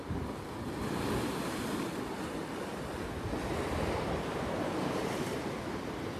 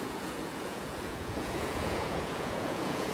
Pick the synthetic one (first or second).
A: second